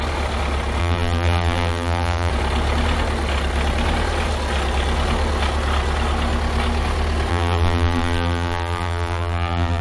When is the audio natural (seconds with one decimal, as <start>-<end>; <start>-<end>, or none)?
0.0-0.8; 2.3-7.3